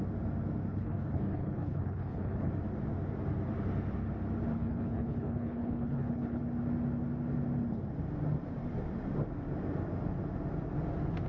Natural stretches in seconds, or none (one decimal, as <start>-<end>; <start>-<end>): 0.0-0.7; 2.5-4.5; 6.4-11.3